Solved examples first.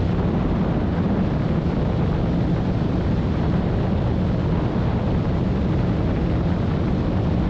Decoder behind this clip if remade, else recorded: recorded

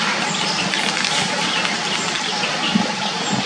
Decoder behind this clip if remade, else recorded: recorded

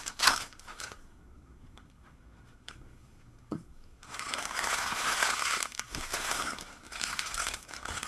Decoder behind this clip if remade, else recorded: remade, codec, SNAC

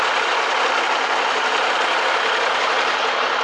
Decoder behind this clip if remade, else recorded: remade, vocoder, BigVGAN v2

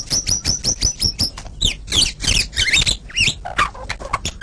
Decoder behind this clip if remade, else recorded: recorded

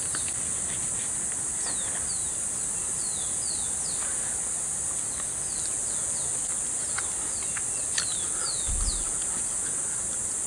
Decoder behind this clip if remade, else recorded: recorded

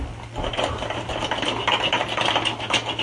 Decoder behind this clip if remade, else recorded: recorded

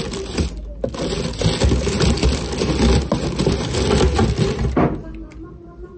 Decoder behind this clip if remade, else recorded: recorded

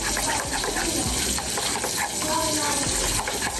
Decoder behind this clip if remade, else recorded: recorded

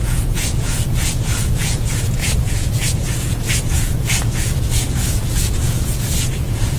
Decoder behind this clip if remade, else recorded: remade, vocoder, Vocos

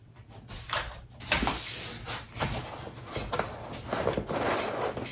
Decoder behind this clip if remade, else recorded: recorded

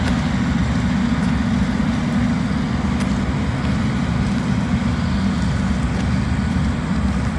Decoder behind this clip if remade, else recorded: recorded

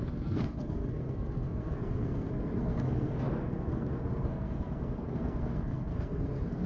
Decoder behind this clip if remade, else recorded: remade, codec, SNAC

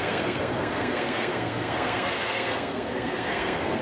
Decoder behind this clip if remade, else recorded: remade, codec, SNAC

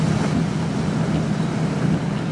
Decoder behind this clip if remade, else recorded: recorded